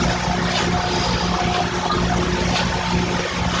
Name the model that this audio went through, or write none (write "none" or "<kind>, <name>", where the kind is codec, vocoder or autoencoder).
none